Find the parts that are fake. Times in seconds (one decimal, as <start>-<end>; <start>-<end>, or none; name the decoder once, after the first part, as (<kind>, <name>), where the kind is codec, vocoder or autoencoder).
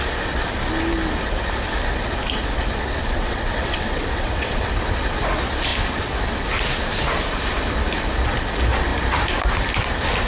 3.0-4.7 (vocoder, WaveNeXt)